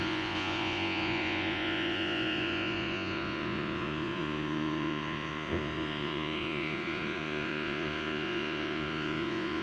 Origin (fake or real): fake